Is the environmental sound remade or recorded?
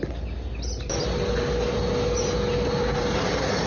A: recorded